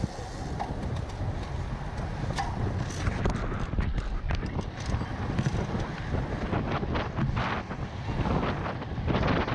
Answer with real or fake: real